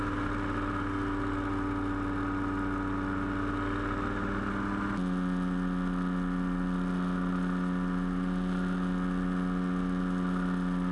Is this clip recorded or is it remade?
recorded